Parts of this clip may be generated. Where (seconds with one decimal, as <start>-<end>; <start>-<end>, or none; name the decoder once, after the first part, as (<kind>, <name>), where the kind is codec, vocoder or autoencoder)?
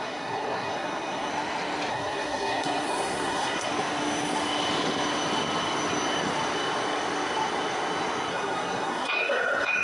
0.0-1.3 (codec, SNAC); 1.9-3.7; 8.3-9.8